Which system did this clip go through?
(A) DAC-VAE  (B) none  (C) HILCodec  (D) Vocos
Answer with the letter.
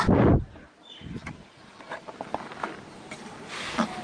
B